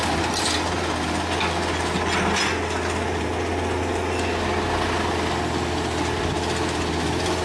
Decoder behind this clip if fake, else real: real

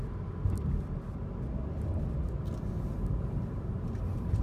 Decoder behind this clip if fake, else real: real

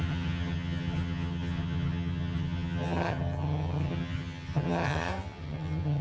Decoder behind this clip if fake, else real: fake, vocoder, HiFi-GAN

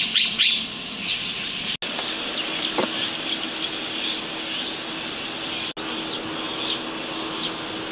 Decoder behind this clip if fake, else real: real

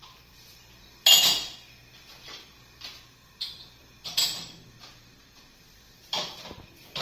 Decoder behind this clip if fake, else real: fake, vocoder, BigVGAN v2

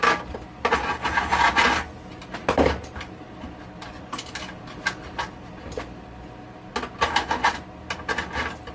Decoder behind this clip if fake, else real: real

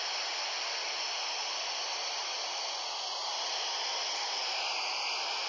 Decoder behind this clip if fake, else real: real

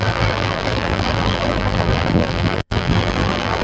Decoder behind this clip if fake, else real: fake, vocoder, BigVGAN v2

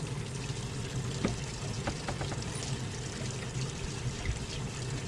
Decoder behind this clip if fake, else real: real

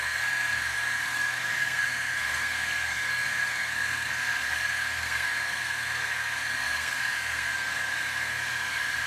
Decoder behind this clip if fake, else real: fake, codec, SNAC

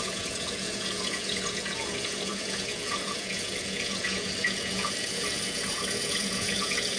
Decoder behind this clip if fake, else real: fake, vocoder, Vocos